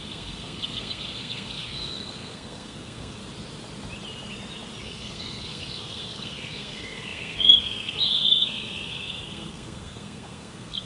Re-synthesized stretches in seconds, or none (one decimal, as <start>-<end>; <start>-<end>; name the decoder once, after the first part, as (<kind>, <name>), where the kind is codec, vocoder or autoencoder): 0.0-3.2 (codec, SNAC); 4.8-10.9